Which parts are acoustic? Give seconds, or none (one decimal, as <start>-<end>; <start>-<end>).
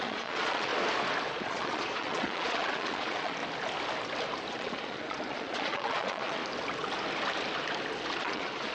0.7-1.3; 3.4-4.5; 6.4-8.2